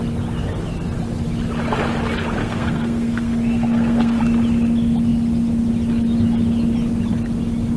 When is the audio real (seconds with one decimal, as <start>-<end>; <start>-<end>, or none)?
0.0-2.4; 4.2-7.8